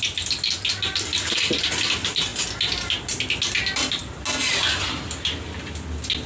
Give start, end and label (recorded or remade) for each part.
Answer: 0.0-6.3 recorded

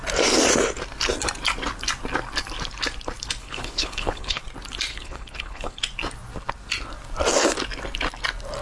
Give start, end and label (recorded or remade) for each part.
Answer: 0.0-3.4 recorded; 3.4-4.4 remade; 4.4-4.9 recorded; 4.9-5.8 remade; 5.8-8.6 recorded

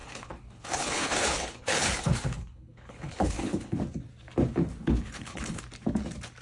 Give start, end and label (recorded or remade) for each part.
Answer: 0.0-3.8 remade; 3.8-4.8 recorded; 4.8-5.6 remade; 5.6-6.4 recorded

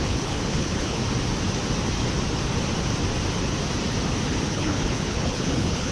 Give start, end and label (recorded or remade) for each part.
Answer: 0.0-1.0 remade; 1.0-4.5 recorded; 4.5-5.9 remade

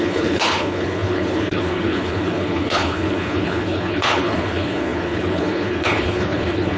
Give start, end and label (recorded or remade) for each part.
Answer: 0.0-6.8 remade

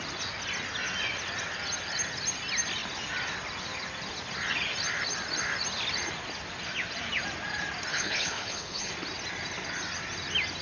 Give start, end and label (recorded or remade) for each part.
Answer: 0.0-7.9 recorded; 7.9-8.9 remade; 8.9-10.6 recorded

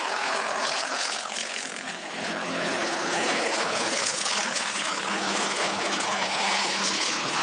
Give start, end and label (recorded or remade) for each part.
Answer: 0.0-7.4 remade